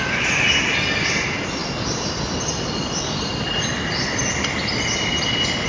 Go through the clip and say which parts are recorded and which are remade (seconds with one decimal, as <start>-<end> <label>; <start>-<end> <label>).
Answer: 0.0-5.7 recorded

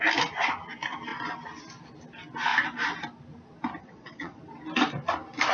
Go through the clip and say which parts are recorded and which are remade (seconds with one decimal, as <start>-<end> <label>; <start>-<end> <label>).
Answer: 0.0-3.8 recorded; 3.8-4.4 remade; 4.4-5.5 recorded

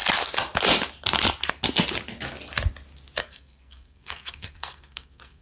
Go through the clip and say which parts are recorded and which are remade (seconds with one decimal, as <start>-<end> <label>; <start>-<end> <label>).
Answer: 0.0-3.2 recorded; 3.2-5.4 remade

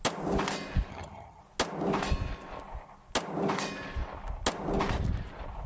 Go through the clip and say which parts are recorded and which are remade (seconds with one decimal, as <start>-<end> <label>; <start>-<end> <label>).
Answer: 0.0-0.9 recorded; 0.9-1.4 remade; 1.4-5.7 recorded

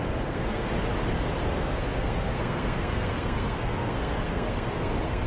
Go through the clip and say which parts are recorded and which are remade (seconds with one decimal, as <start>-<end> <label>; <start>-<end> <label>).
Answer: 0.0-0.7 remade; 0.7-1.4 recorded; 1.4-5.3 remade

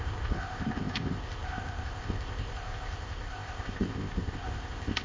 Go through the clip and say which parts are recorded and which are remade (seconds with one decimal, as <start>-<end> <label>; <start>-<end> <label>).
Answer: 0.0-5.0 remade

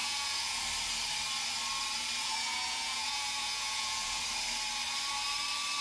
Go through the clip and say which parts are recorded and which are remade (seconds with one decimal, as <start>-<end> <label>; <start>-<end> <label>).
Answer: 0.0-0.6 remade; 0.6-2.2 recorded; 2.2-4.2 remade; 4.2-5.8 recorded

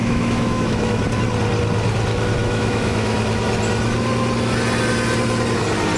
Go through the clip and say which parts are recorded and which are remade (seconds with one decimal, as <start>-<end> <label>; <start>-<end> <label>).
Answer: 0.0-1.0 remade; 1.0-2.4 recorded; 2.4-3.2 remade; 3.2-6.0 recorded